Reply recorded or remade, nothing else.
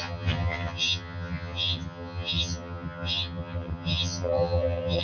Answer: remade